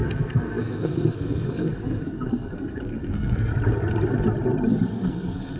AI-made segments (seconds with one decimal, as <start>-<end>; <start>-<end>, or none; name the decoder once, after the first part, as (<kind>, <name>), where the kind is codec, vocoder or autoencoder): 0.0-3.5 (codec, SNAC); 4.9-5.6